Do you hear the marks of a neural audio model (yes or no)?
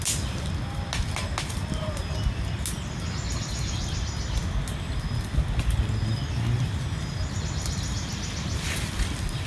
no